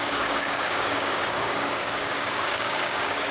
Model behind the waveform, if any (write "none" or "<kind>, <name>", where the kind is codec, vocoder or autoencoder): codec, DAC